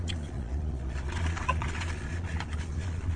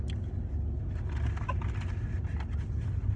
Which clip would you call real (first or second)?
second